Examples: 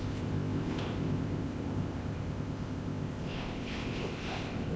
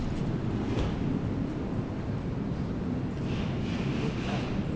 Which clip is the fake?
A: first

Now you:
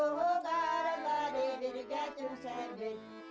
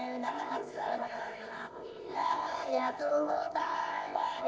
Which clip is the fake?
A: second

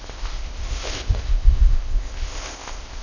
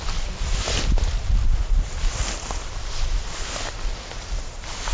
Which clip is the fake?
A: first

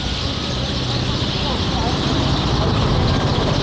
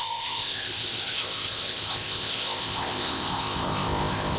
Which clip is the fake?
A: second